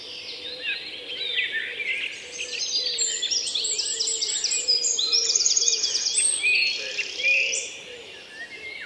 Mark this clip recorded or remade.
recorded